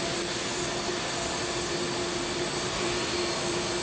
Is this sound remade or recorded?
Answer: recorded